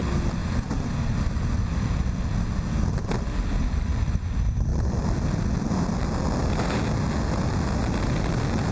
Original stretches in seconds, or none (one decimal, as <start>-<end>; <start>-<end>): 0.0-8.7